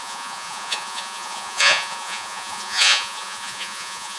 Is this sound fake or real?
fake